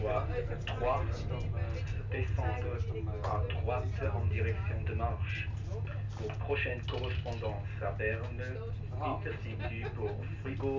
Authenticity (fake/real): real